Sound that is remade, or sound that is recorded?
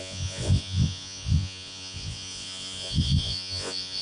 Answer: remade